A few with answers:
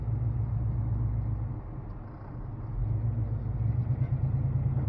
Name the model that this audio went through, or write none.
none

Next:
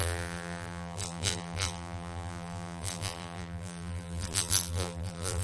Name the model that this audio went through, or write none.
vocoder, BigVGAN v2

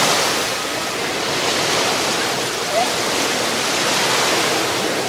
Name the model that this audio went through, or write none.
none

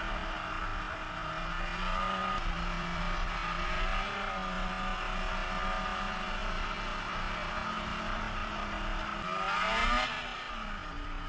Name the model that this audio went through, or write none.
none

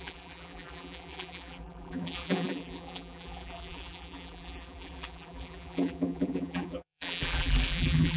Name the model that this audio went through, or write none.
vocoder, BigVGAN v2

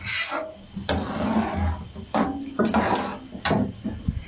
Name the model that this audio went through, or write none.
none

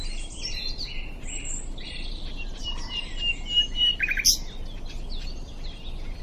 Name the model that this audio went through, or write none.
none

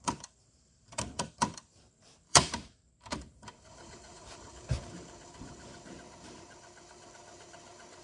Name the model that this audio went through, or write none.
vocoder, BigVGAN v2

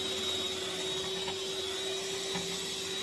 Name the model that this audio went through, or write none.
none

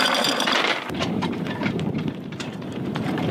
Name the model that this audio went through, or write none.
vocoder, BigVGAN v2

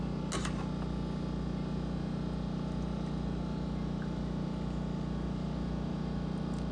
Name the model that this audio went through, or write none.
none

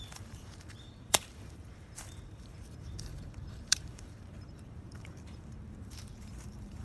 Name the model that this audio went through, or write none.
vocoder, BigVGAN v2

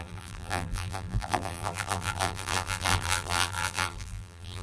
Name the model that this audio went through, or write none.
vocoder, BigVGAN v2